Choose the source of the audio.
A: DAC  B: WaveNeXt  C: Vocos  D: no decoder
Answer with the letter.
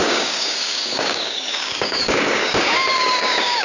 A